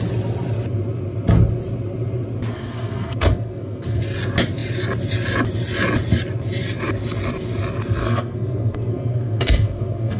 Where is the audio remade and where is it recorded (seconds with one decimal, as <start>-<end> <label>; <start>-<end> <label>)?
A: 0.0-2.5 recorded; 2.5-4.0 remade; 4.0-8.0 recorded; 8.0-10.2 remade